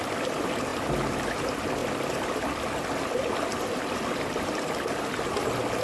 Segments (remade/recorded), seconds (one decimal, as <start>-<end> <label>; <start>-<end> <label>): 0.0-5.8 recorded